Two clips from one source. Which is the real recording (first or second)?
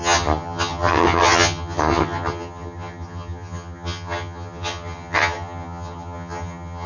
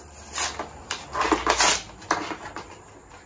second